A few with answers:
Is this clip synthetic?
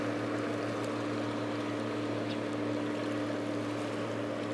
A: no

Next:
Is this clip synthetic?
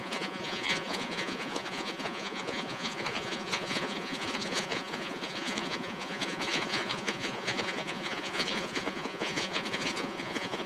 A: yes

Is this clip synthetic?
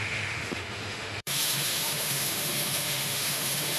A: yes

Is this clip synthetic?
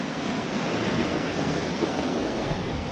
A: yes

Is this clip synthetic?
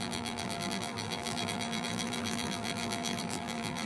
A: yes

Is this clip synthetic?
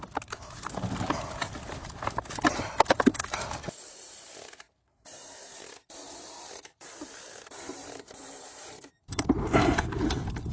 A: yes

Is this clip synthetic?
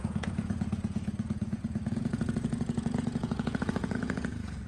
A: yes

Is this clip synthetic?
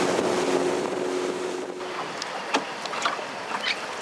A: no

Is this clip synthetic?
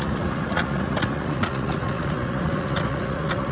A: yes